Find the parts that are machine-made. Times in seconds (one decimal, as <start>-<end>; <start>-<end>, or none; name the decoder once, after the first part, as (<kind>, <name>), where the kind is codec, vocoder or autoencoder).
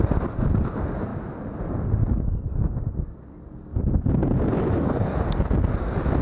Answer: 4.2-5.1 (autoencoder, DAC-VAE)